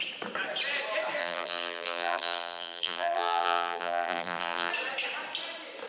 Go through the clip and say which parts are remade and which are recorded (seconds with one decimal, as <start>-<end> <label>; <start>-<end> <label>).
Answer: 0.0-1.2 recorded; 1.2-4.7 remade; 4.7-5.9 recorded